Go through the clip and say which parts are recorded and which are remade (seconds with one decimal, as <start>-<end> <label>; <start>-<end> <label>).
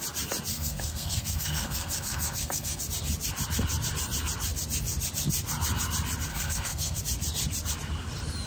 0.0-0.5 recorded; 0.5-2.8 remade; 2.8-6.3 recorded; 6.3-7.0 remade; 7.0-8.5 recorded